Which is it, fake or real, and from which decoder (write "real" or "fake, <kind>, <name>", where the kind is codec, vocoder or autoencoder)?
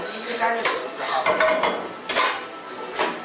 real